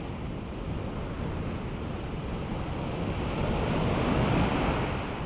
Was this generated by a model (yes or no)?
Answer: no